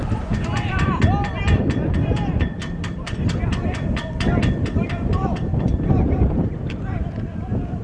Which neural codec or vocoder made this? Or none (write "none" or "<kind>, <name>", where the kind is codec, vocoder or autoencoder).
vocoder, BigVGAN v2